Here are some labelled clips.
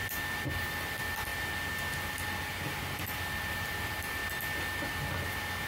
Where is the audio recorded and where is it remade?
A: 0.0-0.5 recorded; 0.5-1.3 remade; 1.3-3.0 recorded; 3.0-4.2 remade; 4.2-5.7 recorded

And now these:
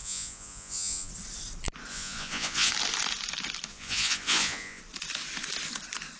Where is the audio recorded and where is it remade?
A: 0.0-1.1 remade; 1.1-1.9 recorded; 1.9-2.7 remade; 2.7-3.7 recorded; 3.7-4.8 remade; 4.8-6.2 recorded

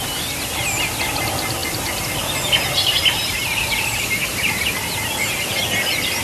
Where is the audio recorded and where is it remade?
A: 0.0-3.2 recorded; 3.2-5.7 remade; 5.7-6.2 recorded

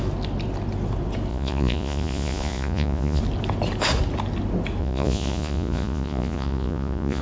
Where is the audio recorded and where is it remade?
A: 0.0-1.3 recorded; 1.3-3.2 remade; 3.2-4.8 recorded; 4.8-7.2 remade

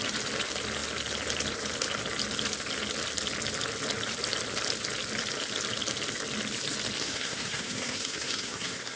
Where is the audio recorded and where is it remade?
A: 0.0-7.0 recorded; 7.0-9.0 remade

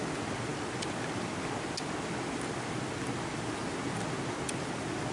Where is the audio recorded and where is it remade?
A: 0.0-5.1 recorded

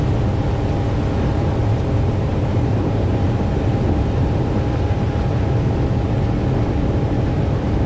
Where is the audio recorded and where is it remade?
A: 0.0-1.6 recorded; 1.6-5.1 remade; 5.1-7.9 recorded